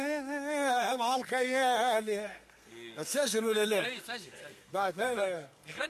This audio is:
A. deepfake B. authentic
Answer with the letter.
A